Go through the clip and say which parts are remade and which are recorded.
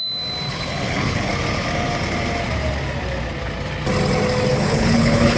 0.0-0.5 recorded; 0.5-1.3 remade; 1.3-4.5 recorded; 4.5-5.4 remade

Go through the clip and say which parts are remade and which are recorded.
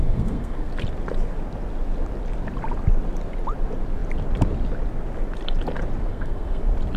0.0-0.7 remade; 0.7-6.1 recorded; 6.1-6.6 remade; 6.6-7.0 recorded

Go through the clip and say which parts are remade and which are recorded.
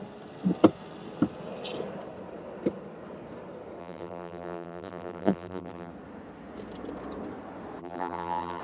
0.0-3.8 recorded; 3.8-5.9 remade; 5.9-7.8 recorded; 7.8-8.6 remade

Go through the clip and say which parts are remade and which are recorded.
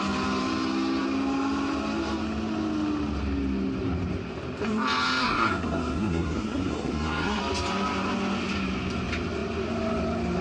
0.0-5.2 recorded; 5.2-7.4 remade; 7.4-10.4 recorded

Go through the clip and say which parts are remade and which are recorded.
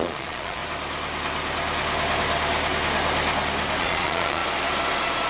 0.0-0.6 remade; 0.6-3.8 recorded; 3.8-4.4 remade; 4.4-5.3 recorded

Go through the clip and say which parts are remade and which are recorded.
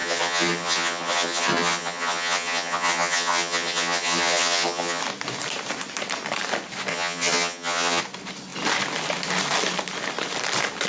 0.0-5.0 remade; 5.0-6.9 recorded; 6.9-8.0 remade; 8.0-10.9 recorded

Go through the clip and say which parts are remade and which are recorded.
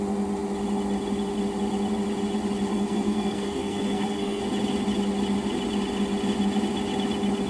0.0-2.7 recorded; 2.7-4.4 remade; 4.4-7.5 recorded